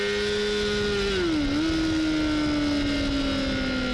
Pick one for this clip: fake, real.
real